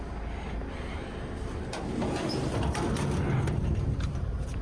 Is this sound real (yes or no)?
yes